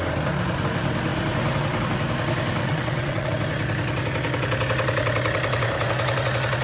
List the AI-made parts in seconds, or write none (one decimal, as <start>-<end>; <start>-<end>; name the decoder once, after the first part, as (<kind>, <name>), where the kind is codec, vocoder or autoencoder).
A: 2.6-3.3 (vocoder, WaveNeXt)